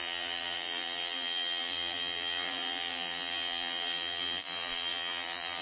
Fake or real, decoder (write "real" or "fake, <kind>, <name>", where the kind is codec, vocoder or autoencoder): fake, vocoder, BigVGAN v2